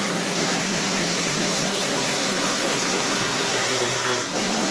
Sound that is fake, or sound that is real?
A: fake